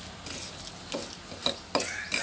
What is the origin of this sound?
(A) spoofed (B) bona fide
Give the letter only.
B